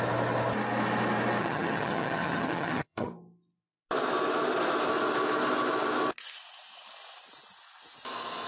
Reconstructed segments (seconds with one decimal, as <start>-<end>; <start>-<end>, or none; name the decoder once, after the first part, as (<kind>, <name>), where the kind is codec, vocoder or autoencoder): 1.4-3.1 (vocoder, HiFi-GAN)